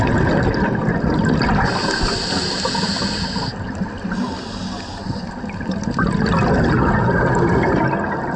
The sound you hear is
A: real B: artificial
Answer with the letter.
A